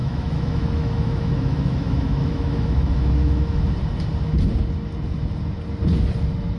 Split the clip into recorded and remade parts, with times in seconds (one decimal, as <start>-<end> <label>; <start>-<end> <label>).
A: 0.0-3.7 remade; 3.7-6.6 recorded